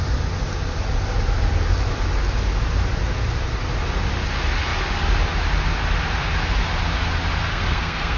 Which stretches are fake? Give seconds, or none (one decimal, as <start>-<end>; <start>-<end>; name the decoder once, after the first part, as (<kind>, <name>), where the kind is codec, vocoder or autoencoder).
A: 7.5-8.2 (codec, SNAC)